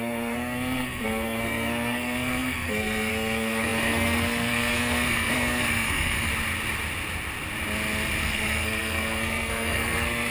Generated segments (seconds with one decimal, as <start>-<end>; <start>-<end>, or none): 0.0-6.3; 8.2-10.3